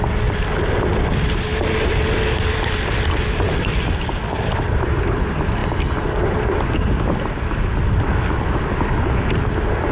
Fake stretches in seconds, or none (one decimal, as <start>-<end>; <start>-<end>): none